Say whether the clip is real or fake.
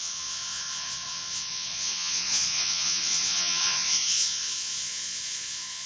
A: fake